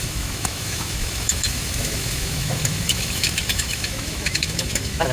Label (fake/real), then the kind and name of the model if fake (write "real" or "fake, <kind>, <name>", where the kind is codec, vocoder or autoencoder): fake, autoencoder, DAC-VAE